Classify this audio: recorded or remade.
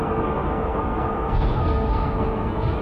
remade